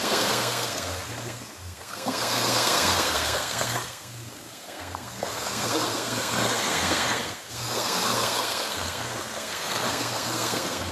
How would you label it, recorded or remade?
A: remade